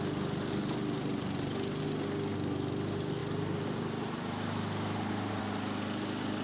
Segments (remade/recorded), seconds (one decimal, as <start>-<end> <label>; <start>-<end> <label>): 0.0-3.2 recorded; 3.2-5.4 remade; 5.4-6.4 recorded

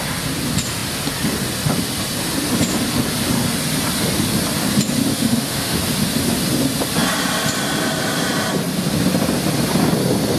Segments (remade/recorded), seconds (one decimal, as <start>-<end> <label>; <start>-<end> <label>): 0.0-5.1 recorded; 5.1-5.8 remade; 5.8-10.4 recorded

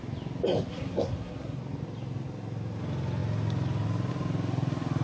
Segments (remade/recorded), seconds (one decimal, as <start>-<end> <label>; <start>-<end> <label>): 0.0-0.7 recorded; 0.7-1.6 remade; 1.6-5.0 recorded

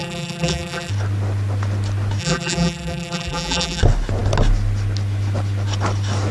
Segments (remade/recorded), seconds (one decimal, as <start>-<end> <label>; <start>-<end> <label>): 0.0-0.9 remade; 0.9-2.2 recorded; 2.2-3.8 remade; 3.8-6.3 recorded

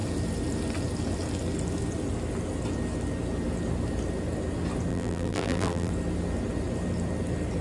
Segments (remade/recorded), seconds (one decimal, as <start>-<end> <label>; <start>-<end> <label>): 0.0-4.9 recorded; 4.9-5.9 remade; 5.9-7.6 recorded

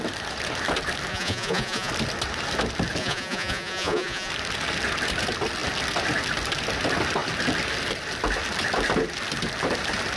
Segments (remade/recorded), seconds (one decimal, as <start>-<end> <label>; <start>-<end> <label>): 0.0-1.1 recorded; 1.1-1.9 remade; 1.9-3.0 recorded; 3.0-4.3 remade; 4.3-10.2 recorded

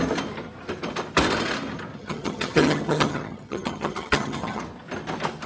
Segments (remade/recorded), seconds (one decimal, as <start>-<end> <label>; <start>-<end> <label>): 0.0-1.9 recorded; 1.9-4.6 remade; 4.6-5.5 recorded